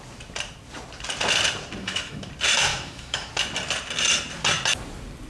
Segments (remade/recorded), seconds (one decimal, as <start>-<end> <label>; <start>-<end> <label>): 0.0-1.8 recorded; 1.8-2.3 remade; 2.3-2.7 recorded; 2.7-3.3 remade; 3.3-5.3 recorded